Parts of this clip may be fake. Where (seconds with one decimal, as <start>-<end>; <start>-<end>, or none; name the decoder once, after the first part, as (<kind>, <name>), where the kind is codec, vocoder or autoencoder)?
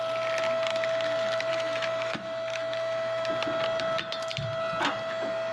1.5-3.3 (autoencoder, DAC-VAE)